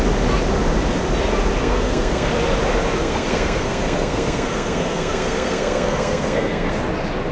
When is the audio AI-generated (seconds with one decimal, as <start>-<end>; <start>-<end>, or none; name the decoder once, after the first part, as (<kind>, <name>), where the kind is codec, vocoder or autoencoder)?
1.6-2.3 (codec, SNAC); 3.0-6.8